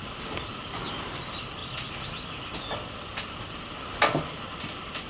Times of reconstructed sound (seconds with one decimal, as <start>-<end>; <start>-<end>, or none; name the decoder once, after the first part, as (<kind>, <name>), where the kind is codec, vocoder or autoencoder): none